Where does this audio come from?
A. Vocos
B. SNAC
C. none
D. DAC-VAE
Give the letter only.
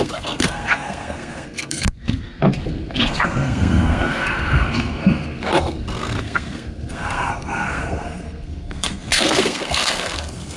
B